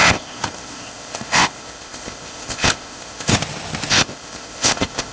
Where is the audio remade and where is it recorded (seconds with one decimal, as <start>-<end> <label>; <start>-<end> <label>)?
0.0-3.3 remade; 3.3-3.9 recorded; 3.9-5.1 remade